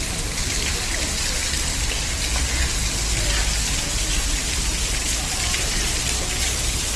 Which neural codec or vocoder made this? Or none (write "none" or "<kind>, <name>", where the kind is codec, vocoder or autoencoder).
none